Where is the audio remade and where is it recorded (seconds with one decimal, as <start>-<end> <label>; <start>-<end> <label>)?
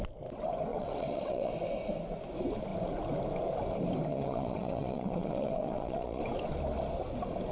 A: 0.0-0.7 recorded; 0.7-1.5 remade; 1.5-4.1 recorded; 4.1-6.2 remade; 6.2-7.5 recorded